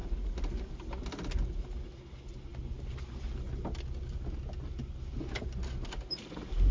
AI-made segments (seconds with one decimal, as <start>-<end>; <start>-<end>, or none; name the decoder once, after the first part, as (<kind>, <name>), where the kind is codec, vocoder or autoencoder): none